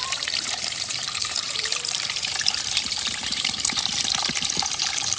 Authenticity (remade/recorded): remade